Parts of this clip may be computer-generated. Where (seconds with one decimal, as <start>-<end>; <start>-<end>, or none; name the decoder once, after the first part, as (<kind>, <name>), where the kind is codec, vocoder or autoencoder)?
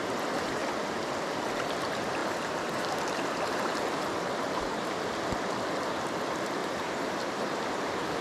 6.6-7.6 (vocoder, BigVGAN v2)